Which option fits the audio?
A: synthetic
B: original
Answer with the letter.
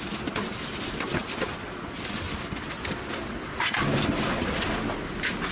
B